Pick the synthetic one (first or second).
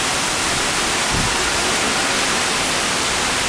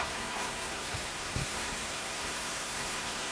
second